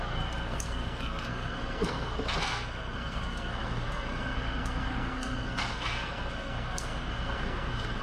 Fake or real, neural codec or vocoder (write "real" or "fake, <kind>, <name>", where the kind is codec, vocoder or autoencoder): fake, codec, SNAC